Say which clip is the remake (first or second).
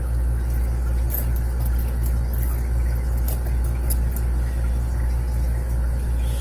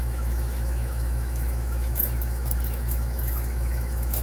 second